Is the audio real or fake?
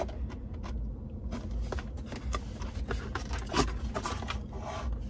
real